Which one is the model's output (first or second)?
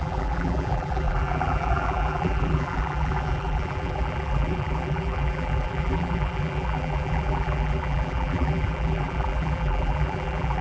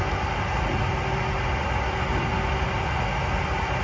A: first